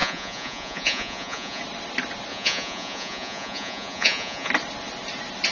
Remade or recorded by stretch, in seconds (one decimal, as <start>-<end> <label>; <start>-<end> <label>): 0.0-1.6 remade; 1.6-2.3 recorded; 2.3-4.5 remade; 4.5-5.5 recorded